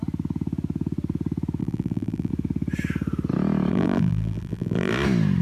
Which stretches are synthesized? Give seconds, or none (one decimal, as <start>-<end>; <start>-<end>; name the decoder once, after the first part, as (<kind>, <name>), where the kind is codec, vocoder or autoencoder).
1.6-2.3 (vocoder, BigVGAN v2); 3.7-4.9